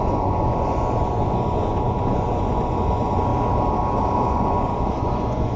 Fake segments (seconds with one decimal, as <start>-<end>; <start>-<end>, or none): 0.0-3.3; 4.3-5.6